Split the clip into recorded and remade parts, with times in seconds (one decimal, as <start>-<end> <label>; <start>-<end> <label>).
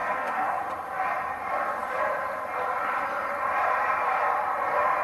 0.0-0.6 remade; 0.6-5.0 recorded